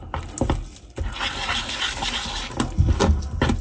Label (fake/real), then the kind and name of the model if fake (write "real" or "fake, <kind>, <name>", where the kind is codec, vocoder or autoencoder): real